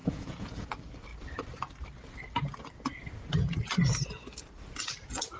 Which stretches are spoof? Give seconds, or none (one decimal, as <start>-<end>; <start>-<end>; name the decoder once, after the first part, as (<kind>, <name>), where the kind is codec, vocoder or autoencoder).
0.0-0.7 (vocoder, Vocos)